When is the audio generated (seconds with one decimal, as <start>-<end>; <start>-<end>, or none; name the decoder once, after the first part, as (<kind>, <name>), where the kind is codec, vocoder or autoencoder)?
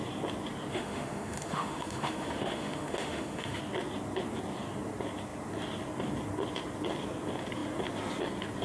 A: 0.7-3.6 (autoencoder, DAC-VAE)